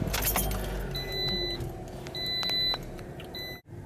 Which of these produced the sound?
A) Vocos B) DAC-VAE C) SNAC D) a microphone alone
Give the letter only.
D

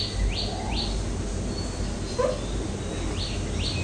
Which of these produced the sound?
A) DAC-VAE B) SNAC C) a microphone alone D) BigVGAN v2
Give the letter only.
C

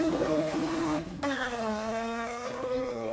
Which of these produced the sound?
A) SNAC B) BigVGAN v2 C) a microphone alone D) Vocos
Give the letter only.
A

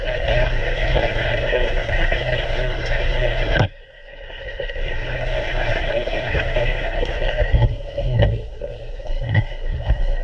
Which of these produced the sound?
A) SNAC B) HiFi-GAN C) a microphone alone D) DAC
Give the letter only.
A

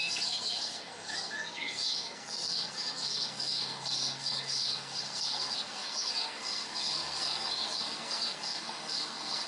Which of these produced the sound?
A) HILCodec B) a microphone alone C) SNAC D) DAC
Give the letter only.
C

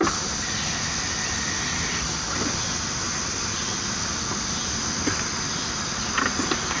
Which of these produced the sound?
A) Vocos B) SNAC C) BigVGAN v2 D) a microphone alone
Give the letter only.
D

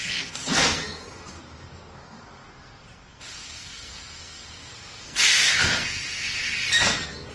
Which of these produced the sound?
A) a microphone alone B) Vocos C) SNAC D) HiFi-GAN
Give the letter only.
C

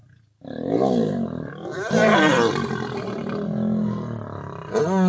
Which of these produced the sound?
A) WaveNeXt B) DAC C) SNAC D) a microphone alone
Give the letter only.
D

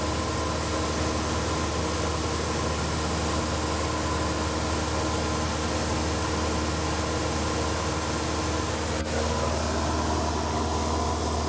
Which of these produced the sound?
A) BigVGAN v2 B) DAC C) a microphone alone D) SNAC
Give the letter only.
C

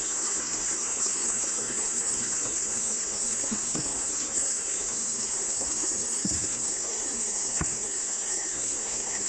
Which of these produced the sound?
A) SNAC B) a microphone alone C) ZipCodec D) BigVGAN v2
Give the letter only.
A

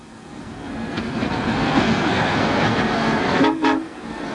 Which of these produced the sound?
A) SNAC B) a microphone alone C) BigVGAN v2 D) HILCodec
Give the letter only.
A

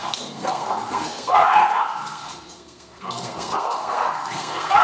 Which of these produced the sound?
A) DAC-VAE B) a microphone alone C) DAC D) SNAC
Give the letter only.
D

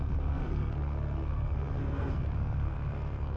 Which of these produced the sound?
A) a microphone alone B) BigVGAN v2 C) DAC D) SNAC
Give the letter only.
D